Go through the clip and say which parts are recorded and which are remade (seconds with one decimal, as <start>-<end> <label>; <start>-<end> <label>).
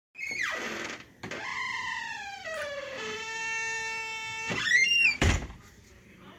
0.0-1.5 recorded; 1.5-5.3 remade; 5.3-6.4 recorded